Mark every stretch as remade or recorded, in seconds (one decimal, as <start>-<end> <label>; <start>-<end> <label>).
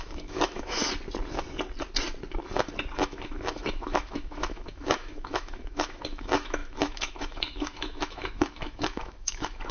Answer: 0.0-0.8 remade; 0.8-2.9 recorded; 2.9-9.7 remade